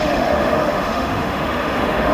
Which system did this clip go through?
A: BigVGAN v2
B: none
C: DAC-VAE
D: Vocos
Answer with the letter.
C